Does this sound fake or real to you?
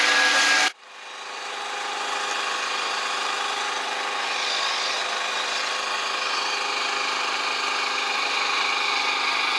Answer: real